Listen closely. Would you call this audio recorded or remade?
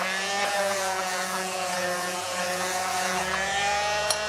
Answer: remade